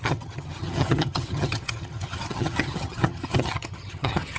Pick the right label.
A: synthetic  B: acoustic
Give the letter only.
A